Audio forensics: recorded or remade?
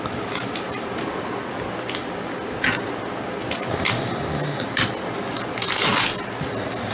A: recorded